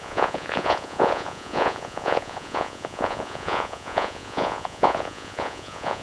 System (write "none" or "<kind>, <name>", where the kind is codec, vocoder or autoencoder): vocoder, Vocos